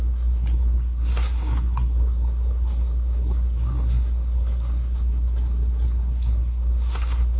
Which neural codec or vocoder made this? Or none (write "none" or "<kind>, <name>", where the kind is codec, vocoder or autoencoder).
codec, SNAC